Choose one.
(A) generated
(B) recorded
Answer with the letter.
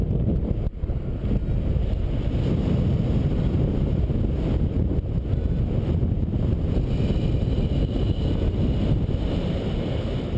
B